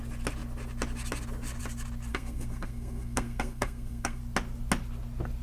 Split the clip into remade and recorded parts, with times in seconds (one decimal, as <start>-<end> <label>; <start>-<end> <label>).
0.0-2.1 recorded; 2.1-4.2 remade; 4.2-5.4 recorded